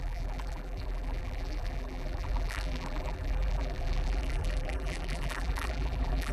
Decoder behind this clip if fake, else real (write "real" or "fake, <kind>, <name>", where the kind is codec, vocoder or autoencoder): fake, vocoder, BigVGAN v2